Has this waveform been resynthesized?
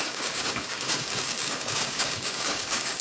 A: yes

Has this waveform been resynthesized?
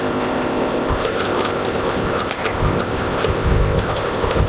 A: yes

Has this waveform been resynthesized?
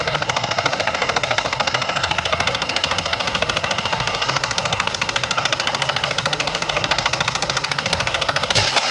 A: yes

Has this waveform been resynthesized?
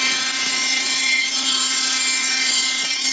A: yes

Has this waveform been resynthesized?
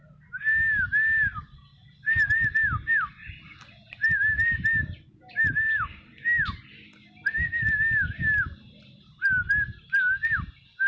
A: no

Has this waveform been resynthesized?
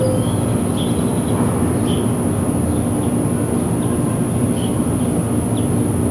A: no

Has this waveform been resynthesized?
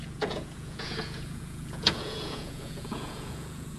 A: yes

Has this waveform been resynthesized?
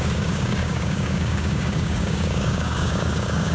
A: yes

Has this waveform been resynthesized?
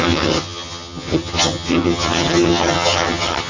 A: yes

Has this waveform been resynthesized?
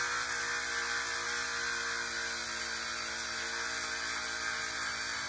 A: no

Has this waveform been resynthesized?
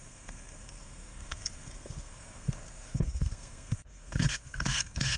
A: yes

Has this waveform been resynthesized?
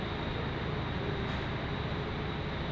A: no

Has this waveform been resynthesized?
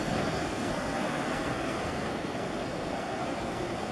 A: yes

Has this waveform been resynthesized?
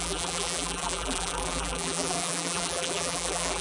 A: yes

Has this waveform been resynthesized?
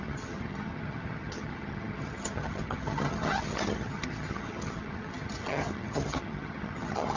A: yes